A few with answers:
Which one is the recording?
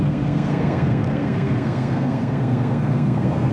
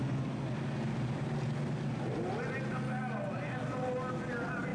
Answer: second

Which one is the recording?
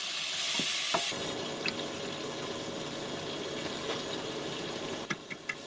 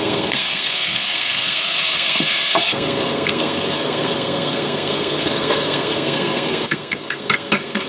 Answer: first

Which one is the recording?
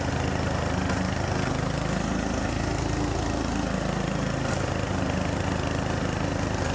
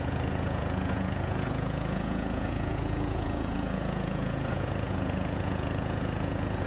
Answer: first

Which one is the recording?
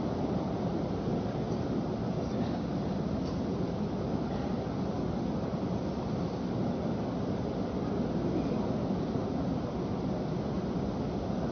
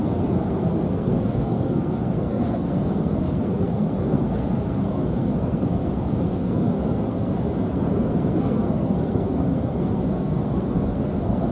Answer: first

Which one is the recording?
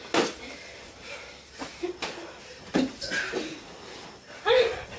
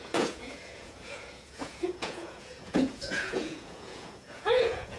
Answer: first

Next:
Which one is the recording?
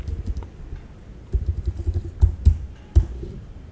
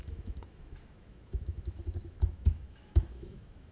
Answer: first